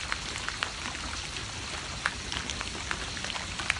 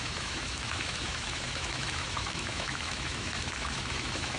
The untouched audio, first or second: first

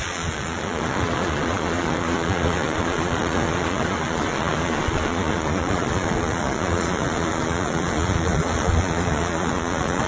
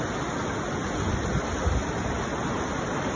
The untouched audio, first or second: second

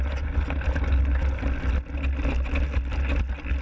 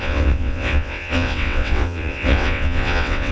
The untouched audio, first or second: first